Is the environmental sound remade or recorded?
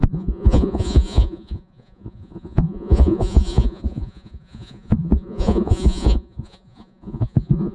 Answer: remade